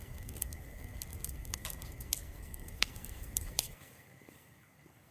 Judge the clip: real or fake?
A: fake